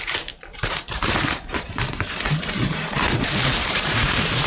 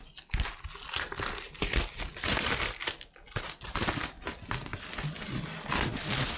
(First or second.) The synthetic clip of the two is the first